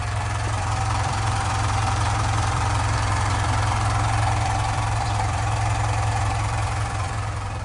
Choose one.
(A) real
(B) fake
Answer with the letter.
B